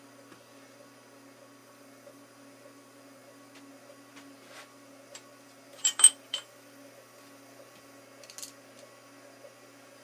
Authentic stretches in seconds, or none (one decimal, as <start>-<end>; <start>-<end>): 0.0-1.6; 2.2-5.8; 8.0-10.0